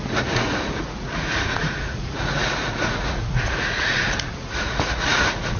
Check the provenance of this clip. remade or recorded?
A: remade